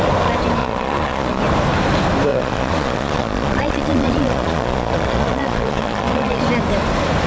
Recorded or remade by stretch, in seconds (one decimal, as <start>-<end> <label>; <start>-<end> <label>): 0.0-0.6 recorded; 0.6-1.4 remade; 1.4-2.3 recorded; 2.3-6.4 remade; 6.4-7.3 recorded